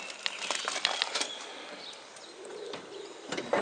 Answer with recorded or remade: remade